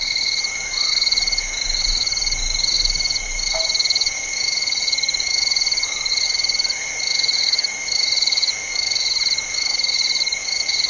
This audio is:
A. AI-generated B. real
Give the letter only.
A